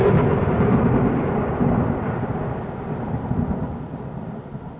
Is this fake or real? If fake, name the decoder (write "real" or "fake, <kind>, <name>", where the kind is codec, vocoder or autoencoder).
real